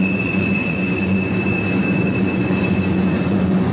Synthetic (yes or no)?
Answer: yes